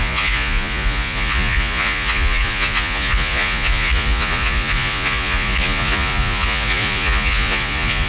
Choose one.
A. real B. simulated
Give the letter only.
B